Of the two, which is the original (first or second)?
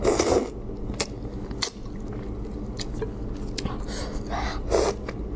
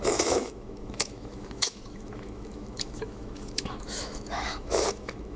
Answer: first